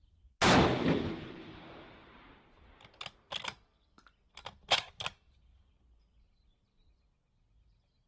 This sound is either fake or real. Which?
real